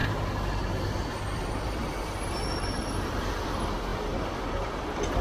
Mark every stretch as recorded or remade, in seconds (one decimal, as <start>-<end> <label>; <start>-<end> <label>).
0.0-0.7 recorded; 0.7-3.9 remade; 3.9-4.5 recorded; 4.5-5.2 remade